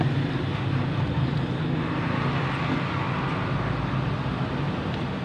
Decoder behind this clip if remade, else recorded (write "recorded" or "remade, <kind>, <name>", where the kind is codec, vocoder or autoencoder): recorded